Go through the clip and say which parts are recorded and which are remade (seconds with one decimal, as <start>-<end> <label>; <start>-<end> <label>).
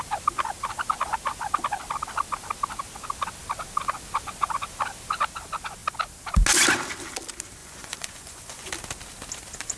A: 0.0-7.6 recorded; 7.6-8.7 remade; 8.7-9.8 recorded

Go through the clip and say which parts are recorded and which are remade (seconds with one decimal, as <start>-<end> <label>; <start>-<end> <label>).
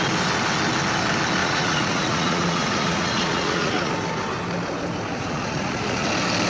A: 0.0-1.4 recorded; 1.4-3.9 remade; 3.9-5.1 recorded; 5.1-6.1 remade; 6.1-6.5 recorded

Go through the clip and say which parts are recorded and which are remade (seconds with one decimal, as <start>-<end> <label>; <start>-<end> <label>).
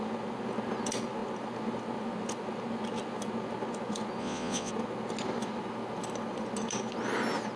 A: 0.0-4.2 recorded; 4.2-4.7 remade; 4.7-7.6 recorded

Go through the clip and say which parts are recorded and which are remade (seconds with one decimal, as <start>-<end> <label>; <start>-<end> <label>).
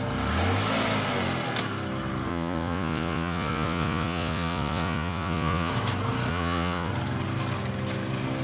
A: 0.0-2.3 recorded; 2.3-5.7 remade; 5.7-6.3 recorded; 6.3-6.9 remade; 6.9-8.4 recorded